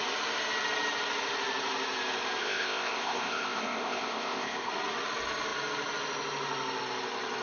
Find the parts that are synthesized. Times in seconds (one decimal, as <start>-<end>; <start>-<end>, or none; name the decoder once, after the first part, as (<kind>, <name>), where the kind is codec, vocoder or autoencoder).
2.4-4.7 (codec, ZipCodec)